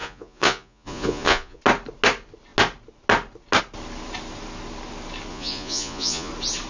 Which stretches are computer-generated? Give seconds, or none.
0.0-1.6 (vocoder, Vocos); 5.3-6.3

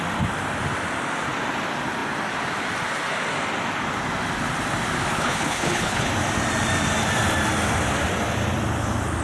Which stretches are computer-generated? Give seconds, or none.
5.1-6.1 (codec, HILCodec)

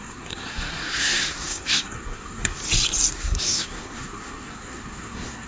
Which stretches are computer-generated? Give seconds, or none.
0.0-2.6 (codec, SNAC); 3.1-5.5

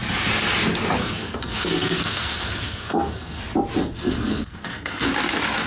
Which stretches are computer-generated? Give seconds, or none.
1.0-3.4 (codec, SNAC); 3.8-5.1